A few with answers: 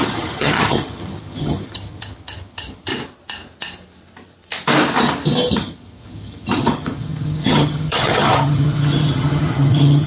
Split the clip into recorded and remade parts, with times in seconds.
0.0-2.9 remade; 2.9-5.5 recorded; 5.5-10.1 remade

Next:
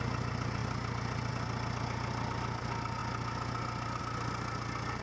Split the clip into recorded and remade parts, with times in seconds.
0.0-5.0 recorded

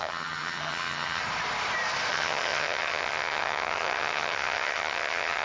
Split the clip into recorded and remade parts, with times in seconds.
0.0-1.2 remade; 1.2-2.1 recorded; 2.1-5.4 remade

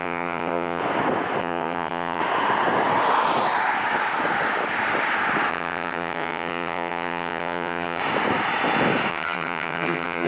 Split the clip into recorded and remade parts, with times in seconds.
0.0-0.8 remade; 0.8-1.4 recorded; 1.4-2.2 remade; 2.2-5.5 recorded; 5.5-8.0 remade; 8.0-9.1 recorded; 9.1-10.3 remade